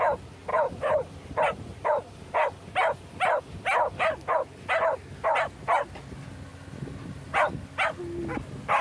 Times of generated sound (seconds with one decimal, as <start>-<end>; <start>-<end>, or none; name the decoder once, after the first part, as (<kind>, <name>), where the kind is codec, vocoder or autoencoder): 0.5-3.4 (vocoder, BigVGAN v2)